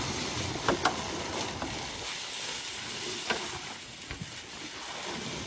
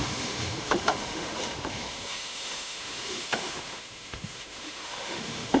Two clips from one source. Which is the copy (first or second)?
second